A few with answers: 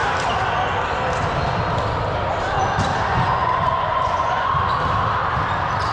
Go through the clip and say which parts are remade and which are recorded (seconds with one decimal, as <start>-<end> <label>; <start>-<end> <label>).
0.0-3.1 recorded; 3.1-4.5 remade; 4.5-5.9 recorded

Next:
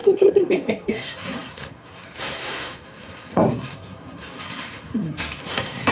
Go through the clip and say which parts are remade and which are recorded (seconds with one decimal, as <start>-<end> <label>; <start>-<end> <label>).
0.0-5.9 remade

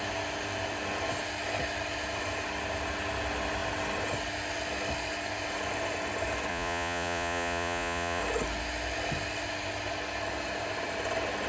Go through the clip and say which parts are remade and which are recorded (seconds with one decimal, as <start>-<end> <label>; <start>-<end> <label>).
0.0-6.5 recorded; 6.5-8.2 remade; 8.2-11.5 recorded

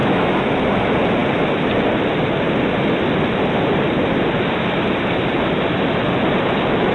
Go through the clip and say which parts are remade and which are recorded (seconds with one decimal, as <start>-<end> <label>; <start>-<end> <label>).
0.0-0.5 remade; 0.5-6.9 recorded

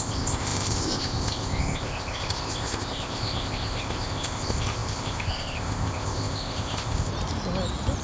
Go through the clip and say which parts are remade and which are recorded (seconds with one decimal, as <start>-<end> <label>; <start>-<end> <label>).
0.0-7.1 remade; 7.1-8.0 recorded

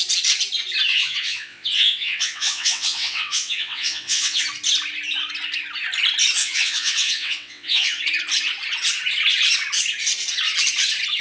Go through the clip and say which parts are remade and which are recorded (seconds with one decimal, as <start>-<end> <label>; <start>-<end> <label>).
0.0-0.9 recorded; 0.9-4.4 remade; 4.4-6.4 recorded; 6.4-8.0 remade; 8.0-11.2 recorded

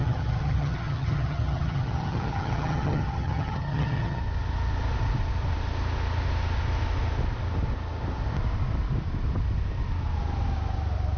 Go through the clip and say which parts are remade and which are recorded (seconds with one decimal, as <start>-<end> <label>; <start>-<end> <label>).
0.0-4.2 remade; 4.2-11.2 recorded